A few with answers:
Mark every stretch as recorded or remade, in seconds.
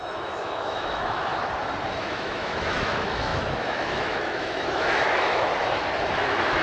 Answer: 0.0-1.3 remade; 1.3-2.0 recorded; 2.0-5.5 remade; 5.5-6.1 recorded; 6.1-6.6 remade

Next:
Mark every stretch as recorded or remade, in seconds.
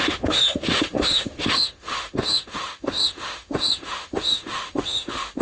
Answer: 0.0-5.4 remade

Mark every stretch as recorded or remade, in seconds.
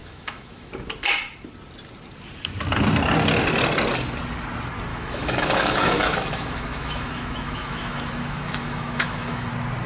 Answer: 0.0-0.7 remade; 0.7-4.9 recorded; 4.9-9.5 remade; 9.5-9.9 recorded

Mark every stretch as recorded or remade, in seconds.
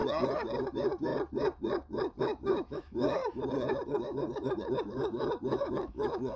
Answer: 0.0-0.7 recorded; 0.7-1.1 remade; 1.1-2.2 recorded; 2.2-3.2 remade; 3.2-3.7 recorded; 3.7-6.4 remade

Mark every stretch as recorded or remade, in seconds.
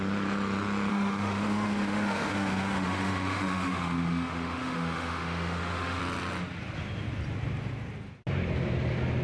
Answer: 0.0-0.9 recorded; 0.9-6.0 remade; 6.0-9.2 recorded